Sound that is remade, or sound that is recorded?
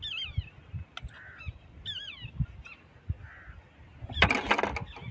recorded